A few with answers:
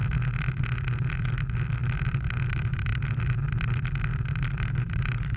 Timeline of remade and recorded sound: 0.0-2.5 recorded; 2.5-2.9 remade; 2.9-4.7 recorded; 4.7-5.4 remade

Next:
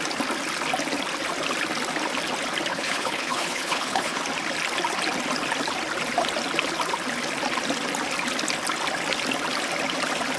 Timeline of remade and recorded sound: 0.0-2.7 recorded; 2.7-4.2 remade; 4.2-10.4 recorded